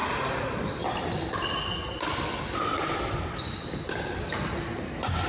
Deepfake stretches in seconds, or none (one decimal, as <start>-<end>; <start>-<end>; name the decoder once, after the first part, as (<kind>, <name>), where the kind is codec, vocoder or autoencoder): none